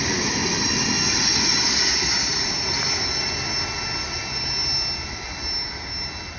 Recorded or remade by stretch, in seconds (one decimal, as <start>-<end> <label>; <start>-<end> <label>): 0.0-6.4 recorded